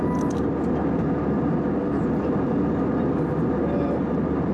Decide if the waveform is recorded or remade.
recorded